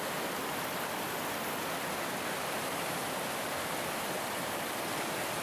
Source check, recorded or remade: recorded